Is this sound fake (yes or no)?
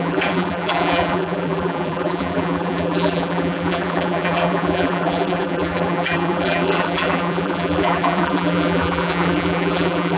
yes